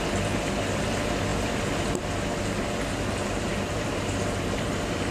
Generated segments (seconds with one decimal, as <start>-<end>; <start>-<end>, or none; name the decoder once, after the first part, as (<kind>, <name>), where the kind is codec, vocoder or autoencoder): 3.5-5.1 (vocoder, BigVGAN v2)